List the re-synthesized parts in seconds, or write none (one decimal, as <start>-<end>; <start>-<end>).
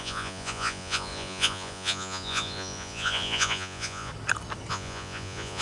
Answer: 0.0-4.1; 4.7-5.6